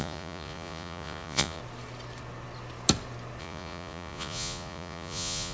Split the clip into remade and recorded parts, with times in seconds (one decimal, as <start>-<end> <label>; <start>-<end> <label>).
0.0-1.6 remade; 1.6-3.4 recorded; 3.4-5.5 remade